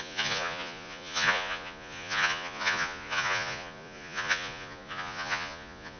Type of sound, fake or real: fake